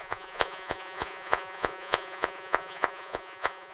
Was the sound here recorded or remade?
remade